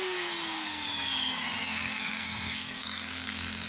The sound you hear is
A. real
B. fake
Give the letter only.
B